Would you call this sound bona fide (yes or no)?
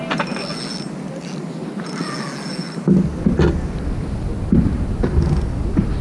yes